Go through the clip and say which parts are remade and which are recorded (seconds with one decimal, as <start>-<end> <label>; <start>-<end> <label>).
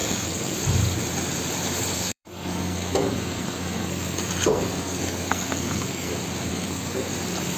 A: 0.0-0.6 remade; 0.6-1.9 recorded; 1.9-6.1 remade; 6.1-6.5 recorded; 6.5-7.1 remade; 7.1-7.6 recorded